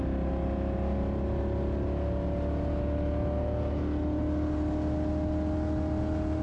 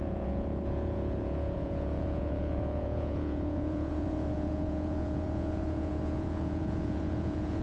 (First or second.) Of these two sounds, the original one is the first